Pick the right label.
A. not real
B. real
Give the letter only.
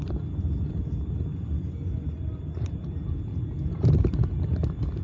B